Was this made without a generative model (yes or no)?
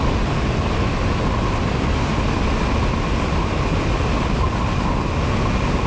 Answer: yes